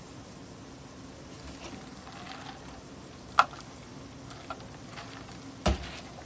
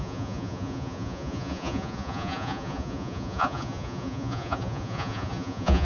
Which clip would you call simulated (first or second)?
second